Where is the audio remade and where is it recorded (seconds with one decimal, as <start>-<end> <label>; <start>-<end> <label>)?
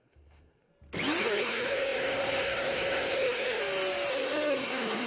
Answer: 0.0-0.7 remade; 0.7-1.2 recorded; 1.2-3.6 remade; 3.6-4.1 recorded; 4.1-5.1 remade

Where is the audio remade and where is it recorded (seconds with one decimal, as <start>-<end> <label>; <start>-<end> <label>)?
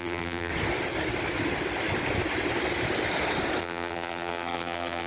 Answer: 0.0-0.5 remade; 0.5-3.6 recorded; 3.6-5.1 remade